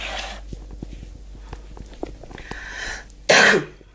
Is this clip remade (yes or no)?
no